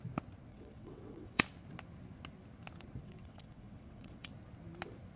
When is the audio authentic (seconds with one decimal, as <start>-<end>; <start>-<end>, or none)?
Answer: 0.0-0.5; 1.4-3.0; 4.3-5.2